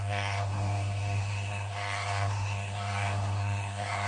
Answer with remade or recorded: remade